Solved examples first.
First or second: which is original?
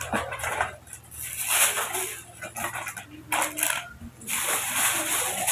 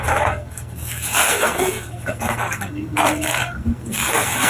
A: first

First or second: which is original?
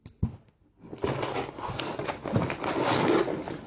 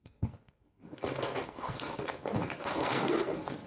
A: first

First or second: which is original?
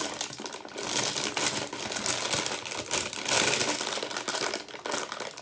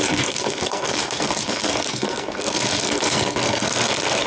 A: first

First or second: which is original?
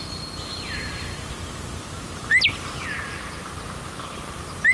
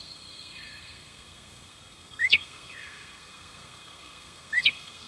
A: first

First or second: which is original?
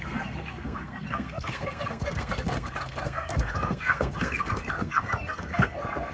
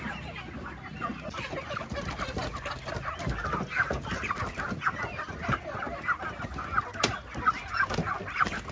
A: second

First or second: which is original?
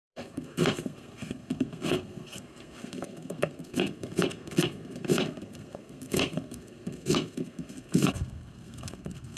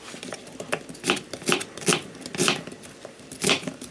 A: second